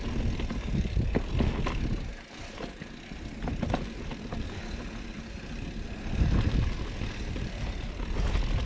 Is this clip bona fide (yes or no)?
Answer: yes